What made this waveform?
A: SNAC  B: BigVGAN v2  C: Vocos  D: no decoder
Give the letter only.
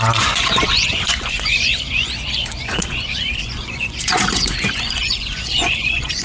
C